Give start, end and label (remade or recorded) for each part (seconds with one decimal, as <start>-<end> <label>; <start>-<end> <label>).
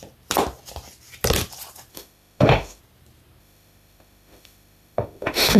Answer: 0.0-1.9 recorded; 1.9-2.8 remade; 2.8-3.4 recorded; 3.4-5.6 remade